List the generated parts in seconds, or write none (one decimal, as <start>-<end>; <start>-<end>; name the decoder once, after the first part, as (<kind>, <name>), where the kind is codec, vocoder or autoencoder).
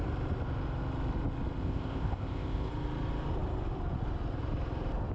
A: 1.6-2.7 (codec, ZipCodec)